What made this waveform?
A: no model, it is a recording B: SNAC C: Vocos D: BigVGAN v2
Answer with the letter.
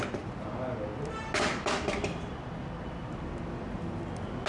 A